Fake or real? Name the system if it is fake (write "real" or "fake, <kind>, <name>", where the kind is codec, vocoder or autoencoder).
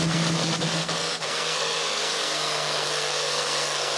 fake, codec, SNAC